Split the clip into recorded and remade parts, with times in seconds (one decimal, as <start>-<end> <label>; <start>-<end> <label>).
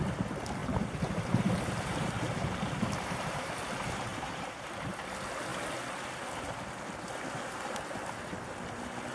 0.0-0.6 recorded; 0.6-3.5 remade; 3.5-4.1 recorded; 4.1-5.0 remade; 5.0-9.1 recorded